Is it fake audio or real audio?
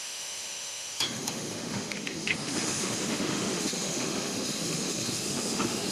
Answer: fake